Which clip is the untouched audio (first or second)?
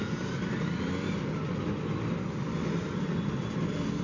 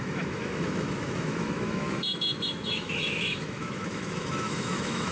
first